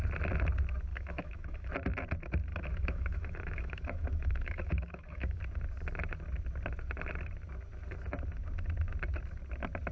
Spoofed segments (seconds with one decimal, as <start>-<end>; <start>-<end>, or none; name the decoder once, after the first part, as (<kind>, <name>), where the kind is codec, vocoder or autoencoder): 0.9-1.7 (autoencoder, DAC-VAE); 2.5-5.4

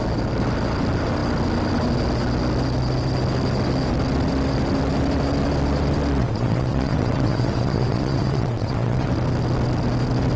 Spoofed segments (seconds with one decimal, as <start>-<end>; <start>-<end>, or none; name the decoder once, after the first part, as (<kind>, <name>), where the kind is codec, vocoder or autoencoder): 6.2-9.1 (vocoder, WaveNeXt)

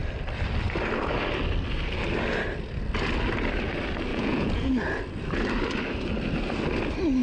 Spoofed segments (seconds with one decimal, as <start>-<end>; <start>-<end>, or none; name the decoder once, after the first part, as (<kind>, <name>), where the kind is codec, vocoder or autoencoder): 4.1-4.7 (vocoder, Vocos)

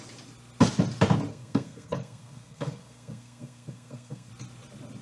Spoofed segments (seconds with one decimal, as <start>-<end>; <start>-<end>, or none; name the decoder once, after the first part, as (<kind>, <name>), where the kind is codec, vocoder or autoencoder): 1.3-4.3 (codec, SNAC)

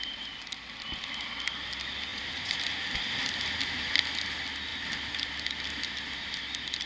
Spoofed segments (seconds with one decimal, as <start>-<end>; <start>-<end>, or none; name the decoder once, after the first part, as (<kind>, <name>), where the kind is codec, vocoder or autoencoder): 2.1-2.6 (vocoder, Vocos)

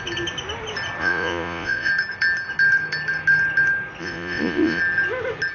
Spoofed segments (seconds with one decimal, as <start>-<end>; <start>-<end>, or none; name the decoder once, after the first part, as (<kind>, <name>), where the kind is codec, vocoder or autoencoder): 1.0-1.9 (vocoder, Vocos); 4.0-4.8

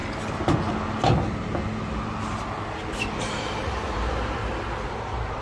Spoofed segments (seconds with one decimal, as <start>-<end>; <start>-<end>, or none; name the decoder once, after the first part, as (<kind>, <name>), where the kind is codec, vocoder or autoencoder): 3.2-4.4 (vocoder, BigVGAN v2); 4.9-5.4

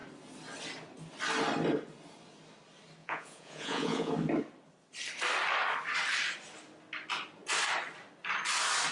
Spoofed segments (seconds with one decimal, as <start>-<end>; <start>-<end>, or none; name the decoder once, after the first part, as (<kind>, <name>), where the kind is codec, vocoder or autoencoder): 3.0-4.1 (vocoder, Vocos)